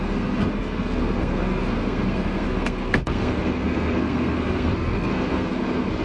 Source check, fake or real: fake